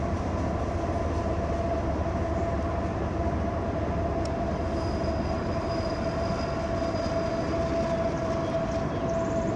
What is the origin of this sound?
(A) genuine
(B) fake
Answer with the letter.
A